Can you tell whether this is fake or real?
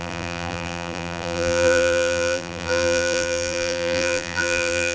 fake